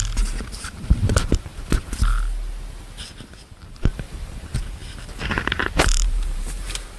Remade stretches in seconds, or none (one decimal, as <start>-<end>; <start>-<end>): 0.0-1.5; 3.7-7.0